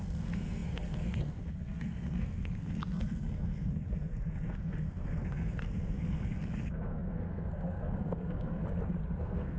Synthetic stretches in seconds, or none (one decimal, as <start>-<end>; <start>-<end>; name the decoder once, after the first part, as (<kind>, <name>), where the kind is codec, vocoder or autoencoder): 0.0-8.6 (codec, SNAC); 9.2-9.6